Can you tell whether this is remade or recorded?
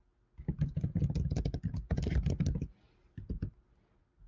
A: recorded